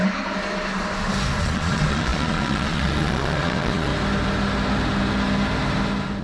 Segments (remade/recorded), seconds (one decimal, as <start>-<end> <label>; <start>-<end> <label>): 0.0-1.4 recorded; 1.4-3.9 remade; 3.9-6.2 recorded